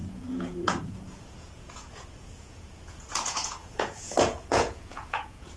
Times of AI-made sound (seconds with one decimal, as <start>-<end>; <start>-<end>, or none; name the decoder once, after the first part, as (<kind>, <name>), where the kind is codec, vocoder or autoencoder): 0.0-5.6 (vocoder, Vocos)